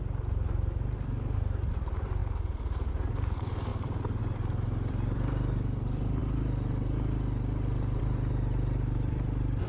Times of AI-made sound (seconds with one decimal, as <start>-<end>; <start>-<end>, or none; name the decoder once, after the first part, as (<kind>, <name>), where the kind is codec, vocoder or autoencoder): 0.0-6.2 (vocoder, BigVGAN v2); 8.0-9.7